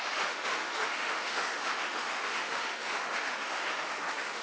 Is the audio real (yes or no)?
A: no